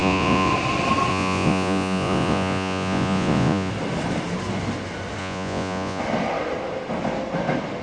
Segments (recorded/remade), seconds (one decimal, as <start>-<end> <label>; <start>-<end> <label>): 0.0-0.5 remade; 0.5-1.1 recorded; 1.1-3.7 remade; 3.7-5.2 recorded; 5.2-6.0 remade; 6.0-7.8 recorded